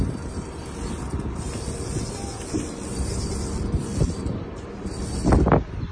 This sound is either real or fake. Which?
fake